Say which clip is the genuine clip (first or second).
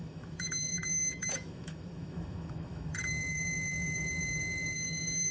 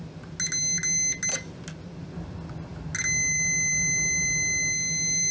second